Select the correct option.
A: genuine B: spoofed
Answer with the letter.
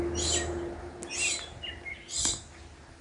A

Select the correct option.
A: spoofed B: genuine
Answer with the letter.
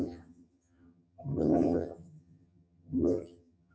A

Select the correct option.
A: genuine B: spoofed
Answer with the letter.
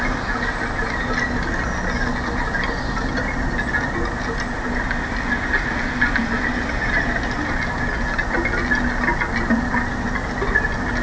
A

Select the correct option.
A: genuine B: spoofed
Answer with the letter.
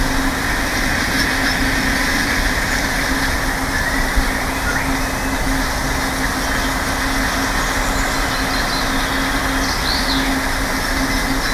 A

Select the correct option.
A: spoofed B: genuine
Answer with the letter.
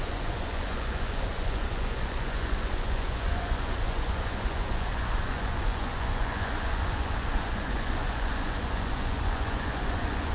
A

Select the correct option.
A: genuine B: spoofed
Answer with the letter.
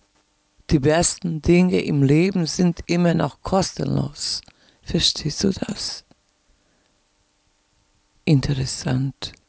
A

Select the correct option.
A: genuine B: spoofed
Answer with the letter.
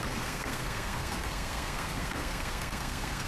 B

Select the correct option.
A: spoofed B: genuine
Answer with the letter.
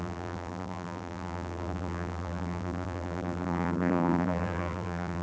A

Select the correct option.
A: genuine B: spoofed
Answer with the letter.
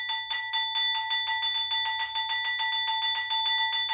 A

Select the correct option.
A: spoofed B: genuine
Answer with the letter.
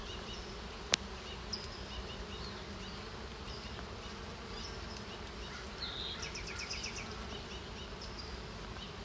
B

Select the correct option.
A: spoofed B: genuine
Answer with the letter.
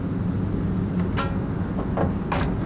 B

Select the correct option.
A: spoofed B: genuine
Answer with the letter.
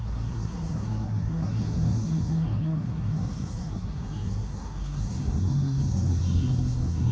A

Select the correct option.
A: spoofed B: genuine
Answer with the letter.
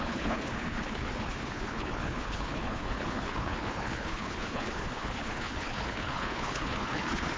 A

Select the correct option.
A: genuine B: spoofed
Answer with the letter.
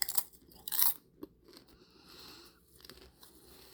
A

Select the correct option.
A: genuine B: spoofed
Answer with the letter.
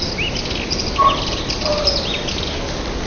A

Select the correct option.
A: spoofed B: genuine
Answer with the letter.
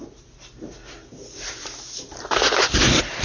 B